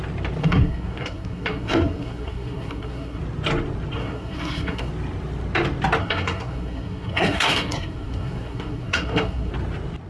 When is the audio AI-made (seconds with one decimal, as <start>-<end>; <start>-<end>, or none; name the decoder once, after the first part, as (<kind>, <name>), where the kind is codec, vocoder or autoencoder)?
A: 0.4-3.2 (codec, SNAC); 4.0-4.9; 6.0-9.5